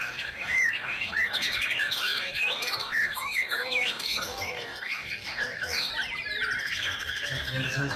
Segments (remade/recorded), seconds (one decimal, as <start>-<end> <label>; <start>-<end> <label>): 0.0-5.9 remade; 5.9-6.6 recorded; 6.6-8.0 remade